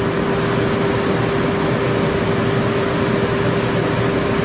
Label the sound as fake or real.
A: real